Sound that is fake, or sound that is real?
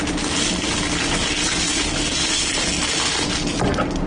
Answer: real